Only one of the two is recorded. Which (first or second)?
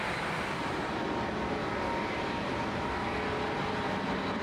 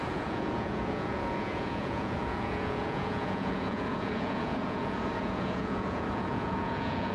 first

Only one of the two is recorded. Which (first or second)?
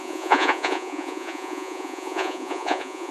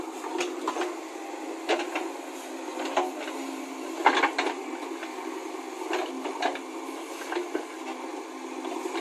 second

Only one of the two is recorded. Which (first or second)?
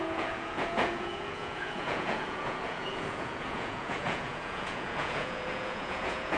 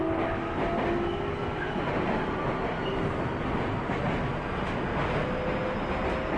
second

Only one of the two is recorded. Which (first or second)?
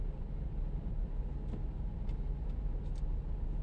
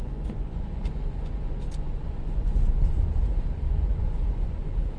first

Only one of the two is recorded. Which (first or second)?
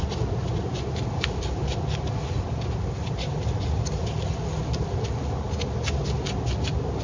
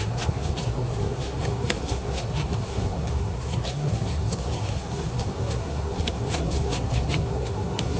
first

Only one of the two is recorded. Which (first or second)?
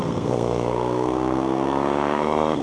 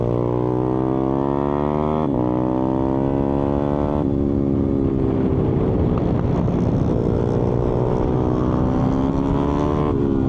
second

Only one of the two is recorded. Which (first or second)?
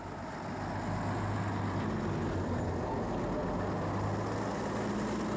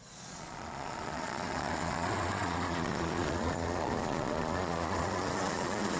first